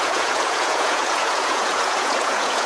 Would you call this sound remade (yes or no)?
yes